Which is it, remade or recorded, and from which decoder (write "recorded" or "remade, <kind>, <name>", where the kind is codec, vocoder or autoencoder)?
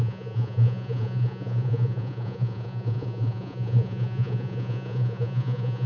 remade, vocoder, Vocos